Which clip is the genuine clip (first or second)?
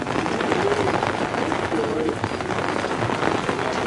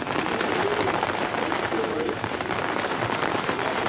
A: first